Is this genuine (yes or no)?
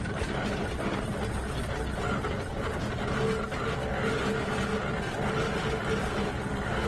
yes